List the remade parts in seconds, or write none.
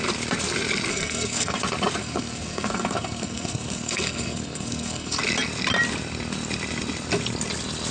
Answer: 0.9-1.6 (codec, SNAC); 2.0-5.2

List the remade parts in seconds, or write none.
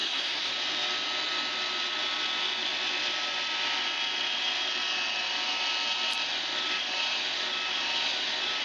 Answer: 0.0-0.5 (codec, SNAC)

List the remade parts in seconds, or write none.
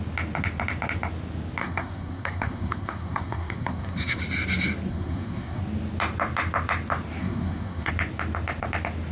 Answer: 1.6-4.2 (codec, SNAC); 4.9-5.6; 7.2-7.9